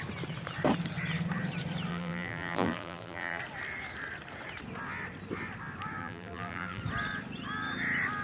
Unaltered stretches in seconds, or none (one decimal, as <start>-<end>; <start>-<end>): 0.0-1.9; 3.4-6.0; 6.8-8.2